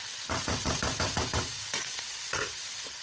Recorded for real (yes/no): no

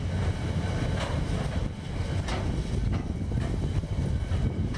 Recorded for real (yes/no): yes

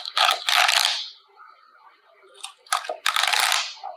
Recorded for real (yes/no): no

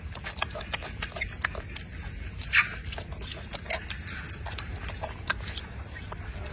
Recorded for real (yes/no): yes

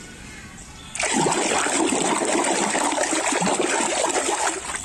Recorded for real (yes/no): no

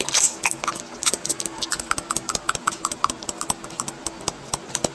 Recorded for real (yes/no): yes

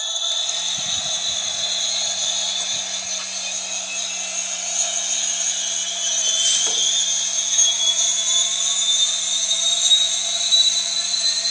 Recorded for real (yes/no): yes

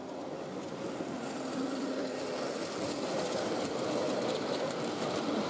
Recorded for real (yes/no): yes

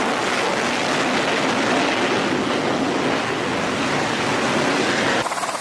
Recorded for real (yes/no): yes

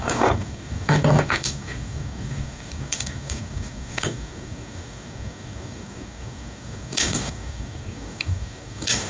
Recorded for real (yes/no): no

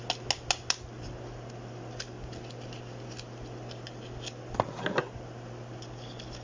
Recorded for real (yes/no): yes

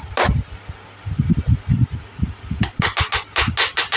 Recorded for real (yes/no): yes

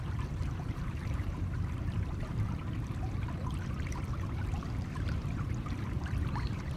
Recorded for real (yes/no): no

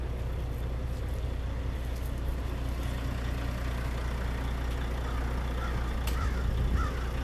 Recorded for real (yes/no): yes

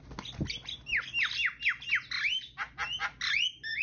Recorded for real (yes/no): yes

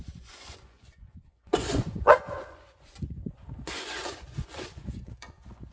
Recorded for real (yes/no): no